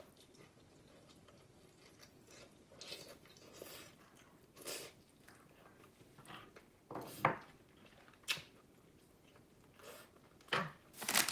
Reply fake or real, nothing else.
real